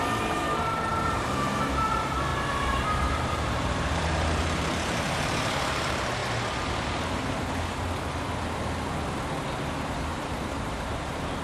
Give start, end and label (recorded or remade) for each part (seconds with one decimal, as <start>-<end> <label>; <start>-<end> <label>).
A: 0.0-6.2 remade; 6.2-9.9 recorded; 9.9-11.4 remade